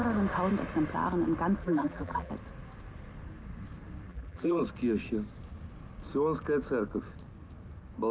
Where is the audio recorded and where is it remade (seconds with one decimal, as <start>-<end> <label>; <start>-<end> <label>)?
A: 0.0-1.6 recorded; 1.6-2.3 remade; 2.3-4.1 recorded; 4.1-4.6 remade; 4.6-8.1 recorded